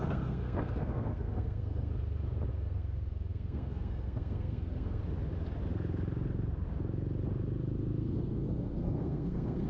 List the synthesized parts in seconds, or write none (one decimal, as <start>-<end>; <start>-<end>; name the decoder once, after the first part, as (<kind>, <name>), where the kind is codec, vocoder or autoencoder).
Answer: 0.0-1.9 (codec, SNAC); 2.5-5.0; 8.0-9.7